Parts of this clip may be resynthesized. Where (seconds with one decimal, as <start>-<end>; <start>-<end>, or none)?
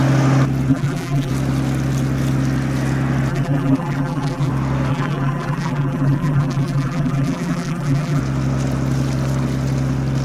0.7-1.3; 3.3-4.5; 4.9-8.2